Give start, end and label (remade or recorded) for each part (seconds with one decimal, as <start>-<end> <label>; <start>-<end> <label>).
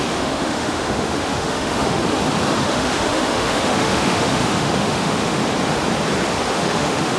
0.0-2.0 remade; 2.0-2.6 recorded; 2.6-5.4 remade; 5.4-6.5 recorded; 6.5-7.2 remade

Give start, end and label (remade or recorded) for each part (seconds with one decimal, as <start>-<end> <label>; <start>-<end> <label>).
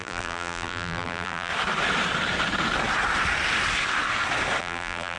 0.0-1.5 remade; 1.5-4.6 recorded; 4.6-5.2 remade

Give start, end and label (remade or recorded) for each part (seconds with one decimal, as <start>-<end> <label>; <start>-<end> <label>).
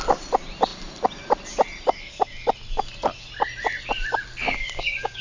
0.0-4.5 recorded; 4.5-5.2 remade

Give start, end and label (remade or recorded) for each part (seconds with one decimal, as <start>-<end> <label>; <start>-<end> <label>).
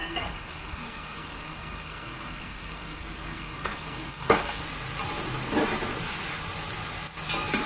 0.0-4.6 remade; 4.6-7.7 recorded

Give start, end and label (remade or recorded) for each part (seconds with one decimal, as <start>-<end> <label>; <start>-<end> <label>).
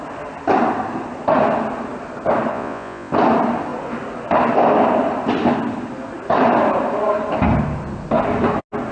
0.0-2.5 recorded; 2.5-3.1 remade; 3.1-8.9 recorded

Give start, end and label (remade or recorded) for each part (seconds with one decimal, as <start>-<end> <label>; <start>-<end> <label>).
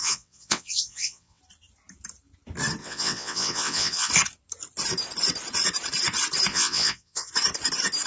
0.0-1.4 remade; 1.4-2.8 recorded; 2.8-4.1 remade; 4.1-6.5 recorded; 6.5-7.3 remade; 7.3-8.1 recorded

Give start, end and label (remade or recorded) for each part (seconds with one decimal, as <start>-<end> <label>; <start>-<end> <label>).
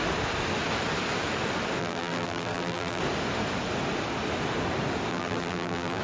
0.0-1.8 recorded; 1.8-3.0 remade; 3.0-5.1 recorded; 5.1-6.0 remade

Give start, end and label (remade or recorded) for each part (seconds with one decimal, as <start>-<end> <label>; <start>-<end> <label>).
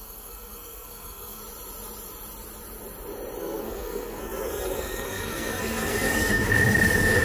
0.0-1.4 remade; 1.4-3.4 recorded; 3.4-7.2 remade